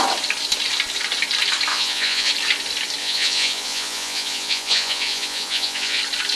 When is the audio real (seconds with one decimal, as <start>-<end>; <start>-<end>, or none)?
0.0-1.7; 2.3-3.0; 6.0-6.4